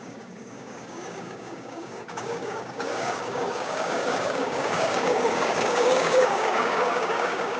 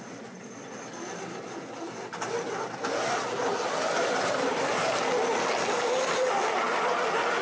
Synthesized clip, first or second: first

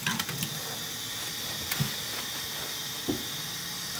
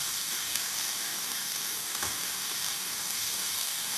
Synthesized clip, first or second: second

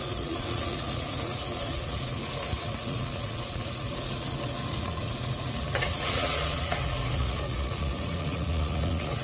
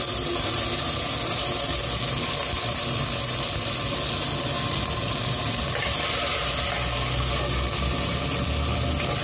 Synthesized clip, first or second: first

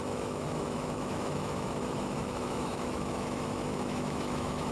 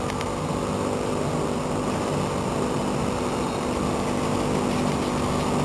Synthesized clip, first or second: first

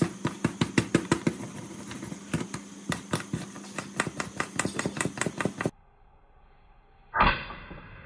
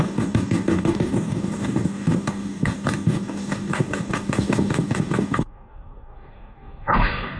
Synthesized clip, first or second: second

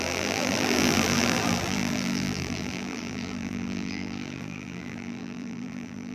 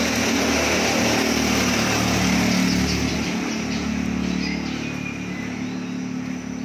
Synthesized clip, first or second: first